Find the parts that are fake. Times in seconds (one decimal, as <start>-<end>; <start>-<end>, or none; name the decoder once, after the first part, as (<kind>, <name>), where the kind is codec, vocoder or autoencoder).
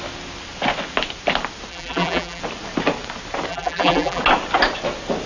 1.7-2.4 (vocoder, BigVGAN v2); 3.5-4.2